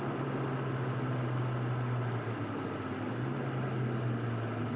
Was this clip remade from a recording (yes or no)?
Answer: no